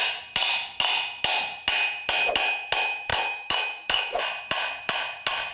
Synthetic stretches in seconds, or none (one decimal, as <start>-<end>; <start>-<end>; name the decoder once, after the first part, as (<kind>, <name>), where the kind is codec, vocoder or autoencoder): 3.1-4.2 (autoencoder, DAC-VAE)